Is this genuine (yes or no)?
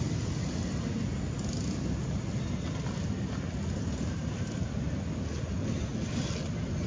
yes